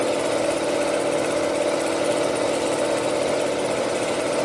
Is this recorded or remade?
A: recorded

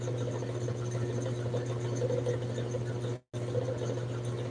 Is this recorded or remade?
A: recorded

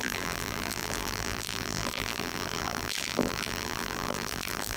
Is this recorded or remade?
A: remade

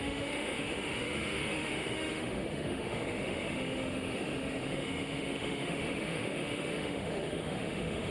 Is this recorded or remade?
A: remade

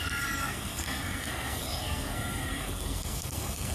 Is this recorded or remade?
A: remade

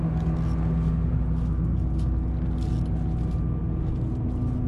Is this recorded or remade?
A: recorded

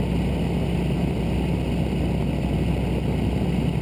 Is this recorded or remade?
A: recorded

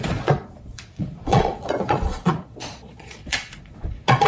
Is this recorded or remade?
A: remade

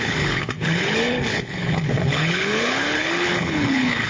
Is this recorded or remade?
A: remade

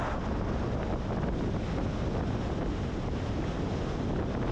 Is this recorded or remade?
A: recorded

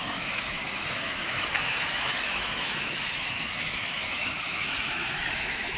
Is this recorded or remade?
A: remade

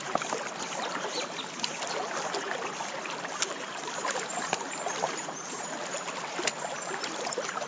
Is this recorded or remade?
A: recorded